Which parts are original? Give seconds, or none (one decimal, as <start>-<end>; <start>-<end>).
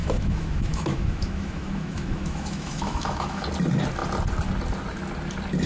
3.4-5.7